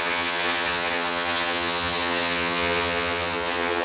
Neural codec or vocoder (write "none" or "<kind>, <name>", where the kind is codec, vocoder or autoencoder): vocoder, HiFi-GAN